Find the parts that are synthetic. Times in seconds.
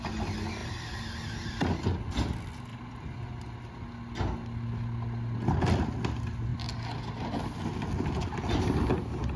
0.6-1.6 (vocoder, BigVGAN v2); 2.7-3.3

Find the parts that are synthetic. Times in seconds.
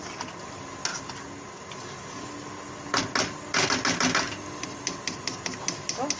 none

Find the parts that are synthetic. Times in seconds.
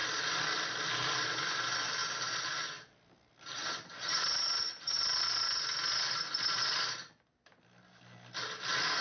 none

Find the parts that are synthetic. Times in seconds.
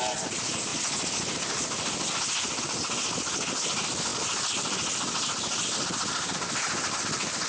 none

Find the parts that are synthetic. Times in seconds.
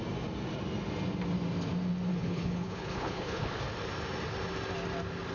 2.1-3.6 (codec, HILCodec)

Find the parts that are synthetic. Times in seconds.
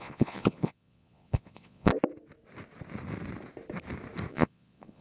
0.0-1.9 (vocoder, Vocos); 4.3-5.0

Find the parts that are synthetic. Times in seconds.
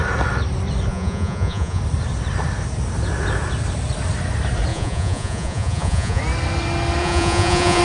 0.9-1.8 (vocoder, Vocos); 4.7-6.2; 7.0-7.8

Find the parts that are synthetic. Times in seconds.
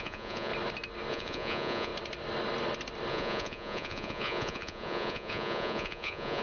0.0-0.5 (vocoder, Vocos); 1.1-1.9; 3.1-6.4